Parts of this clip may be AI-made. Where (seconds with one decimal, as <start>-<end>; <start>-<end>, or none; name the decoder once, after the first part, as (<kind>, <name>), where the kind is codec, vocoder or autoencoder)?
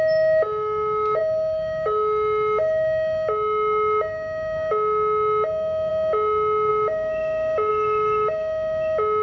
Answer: none